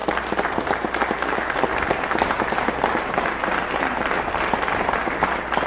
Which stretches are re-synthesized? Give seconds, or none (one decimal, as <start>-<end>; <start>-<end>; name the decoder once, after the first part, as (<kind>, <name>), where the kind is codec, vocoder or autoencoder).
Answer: 1.8-3.4 (vocoder, BigVGAN v2)